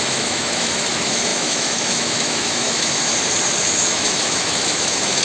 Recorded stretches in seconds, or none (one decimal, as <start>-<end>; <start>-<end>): 3.1-3.7